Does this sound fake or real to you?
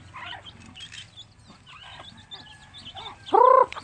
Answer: real